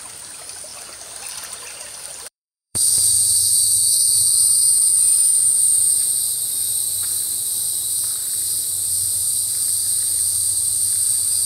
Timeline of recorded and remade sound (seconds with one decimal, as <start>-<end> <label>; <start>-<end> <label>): 0.0-0.7 remade; 0.7-1.5 recorded; 1.5-3.1 remade; 3.1-4.4 recorded; 4.4-5.3 remade; 5.3-8.9 recorded; 8.9-11.5 remade